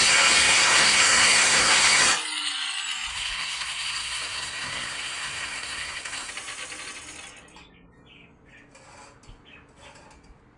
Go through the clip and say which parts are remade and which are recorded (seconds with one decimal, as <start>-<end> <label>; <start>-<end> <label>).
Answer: 0.0-0.4 recorded; 0.4-2.0 remade; 2.0-3.1 recorded; 3.1-6.3 remade; 6.3-10.6 recorded